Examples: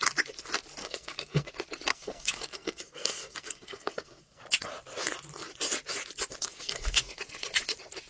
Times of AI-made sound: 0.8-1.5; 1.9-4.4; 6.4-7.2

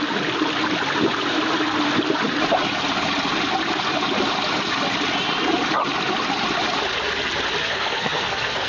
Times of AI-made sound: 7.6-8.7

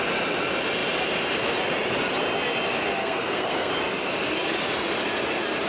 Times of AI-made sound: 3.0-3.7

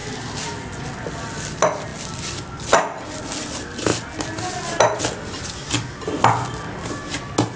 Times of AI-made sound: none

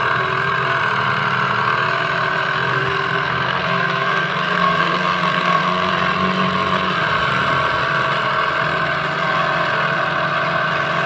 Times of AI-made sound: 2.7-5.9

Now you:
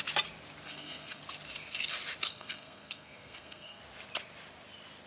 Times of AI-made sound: 0.7-1.2; 2.3-3.8

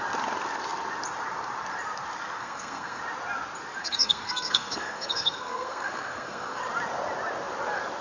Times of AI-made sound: 2.4-3.0; 3.8-6.6

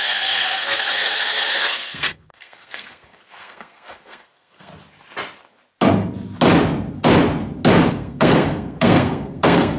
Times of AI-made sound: 0.0-4.7; 7.9-9.8